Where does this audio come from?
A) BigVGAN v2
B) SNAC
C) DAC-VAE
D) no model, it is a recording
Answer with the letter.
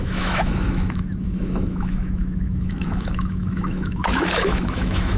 C